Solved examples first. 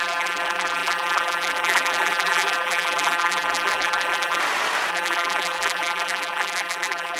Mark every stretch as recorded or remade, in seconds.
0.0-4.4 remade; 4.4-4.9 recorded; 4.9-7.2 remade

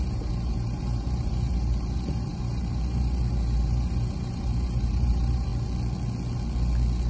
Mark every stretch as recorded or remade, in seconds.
0.0-5.5 remade; 5.5-7.1 recorded

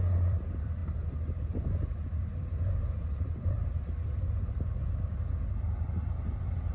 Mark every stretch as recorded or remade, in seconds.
0.0-6.7 remade

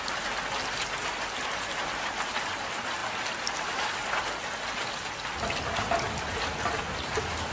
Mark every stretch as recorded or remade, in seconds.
0.0-7.5 recorded

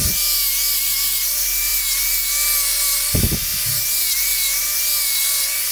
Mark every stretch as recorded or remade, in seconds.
0.0-5.7 recorded

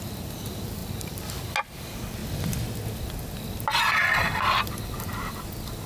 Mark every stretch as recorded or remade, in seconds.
0.0-0.8 recorded; 0.8-1.5 remade; 1.5-5.9 recorded

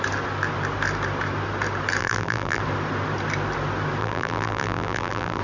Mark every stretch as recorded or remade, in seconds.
0.0-2.0 recorded; 2.0-2.6 remade; 2.6-4.0 recorded; 4.0-5.4 remade